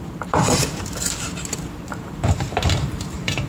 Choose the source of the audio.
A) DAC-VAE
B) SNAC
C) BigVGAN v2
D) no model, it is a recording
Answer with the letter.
C